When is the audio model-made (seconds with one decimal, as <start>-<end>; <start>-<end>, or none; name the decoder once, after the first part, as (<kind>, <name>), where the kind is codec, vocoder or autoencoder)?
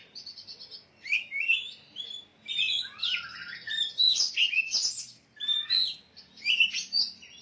1.1-1.7 (autoencoder, DAC-VAE)